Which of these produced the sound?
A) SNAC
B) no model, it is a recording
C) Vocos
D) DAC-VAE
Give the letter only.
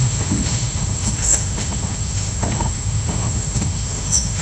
D